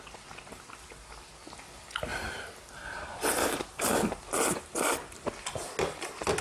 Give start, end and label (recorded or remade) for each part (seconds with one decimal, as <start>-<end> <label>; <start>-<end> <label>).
0.0-2.1 recorded; 2.1-4.6 remade; 4.6-6.4 recorded